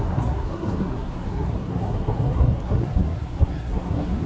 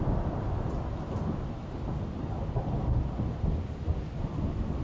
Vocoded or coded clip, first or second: first